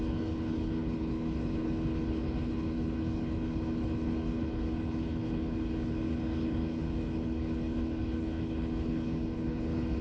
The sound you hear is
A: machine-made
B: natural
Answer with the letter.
A